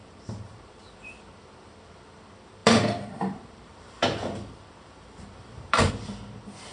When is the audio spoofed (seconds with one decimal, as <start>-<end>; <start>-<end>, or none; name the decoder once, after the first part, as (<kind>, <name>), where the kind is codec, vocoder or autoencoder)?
0.0-0.7 (vocoder, BigVGAN v2); 2.6-5.9